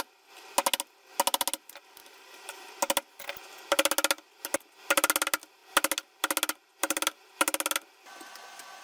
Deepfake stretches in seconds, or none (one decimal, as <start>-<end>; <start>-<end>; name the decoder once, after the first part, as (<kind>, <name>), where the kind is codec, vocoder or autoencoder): 2.0-2.7 (vocoder, BigVGAN v2)